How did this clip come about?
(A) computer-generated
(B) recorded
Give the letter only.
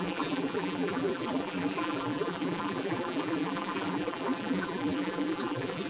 A